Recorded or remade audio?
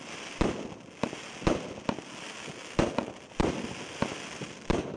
recorded